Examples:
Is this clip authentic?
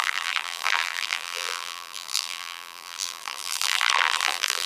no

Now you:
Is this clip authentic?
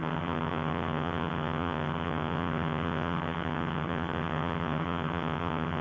no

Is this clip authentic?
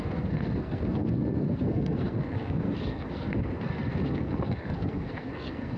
no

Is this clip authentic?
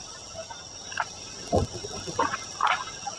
yes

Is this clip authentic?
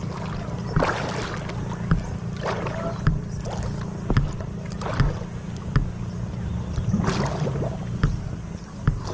yes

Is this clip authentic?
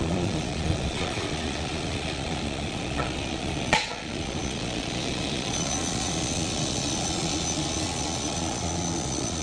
no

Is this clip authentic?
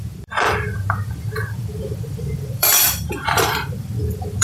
no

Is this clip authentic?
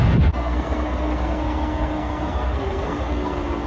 no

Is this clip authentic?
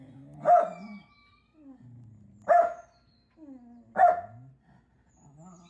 yes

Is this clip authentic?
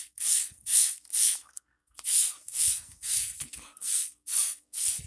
no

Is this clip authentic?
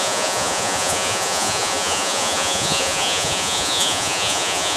no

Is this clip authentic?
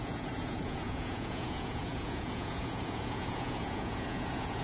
no